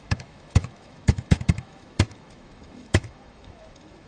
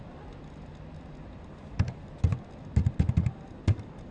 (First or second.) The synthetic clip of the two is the first